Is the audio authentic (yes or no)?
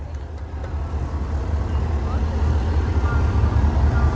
yes